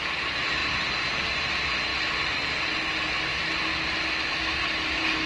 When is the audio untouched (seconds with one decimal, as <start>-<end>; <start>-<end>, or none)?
0.0-3.3